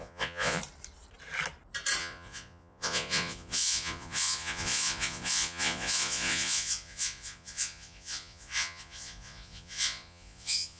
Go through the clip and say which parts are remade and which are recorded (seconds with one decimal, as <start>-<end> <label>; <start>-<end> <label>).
0.0-0.6 remade; 0.6-2.0 recorded; 2.0-10.8 remade